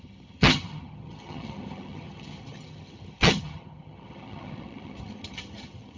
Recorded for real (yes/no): no